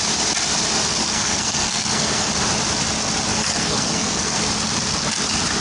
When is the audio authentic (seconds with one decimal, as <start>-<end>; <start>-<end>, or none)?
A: 0.0-1.0; 2.3-3.3; 4.4-5.6